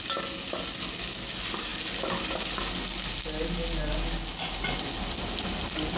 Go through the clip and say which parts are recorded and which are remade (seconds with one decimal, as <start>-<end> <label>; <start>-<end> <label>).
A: 0.0-6.0 recorded